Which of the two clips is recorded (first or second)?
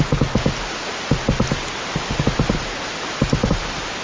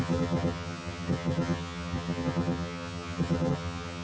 first